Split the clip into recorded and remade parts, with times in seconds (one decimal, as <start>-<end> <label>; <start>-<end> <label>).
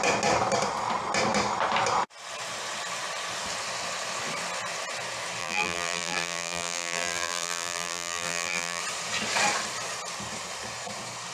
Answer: 0.0-5.4 recorded; 5.4-8.8 remade; 8.8-11.3 recorded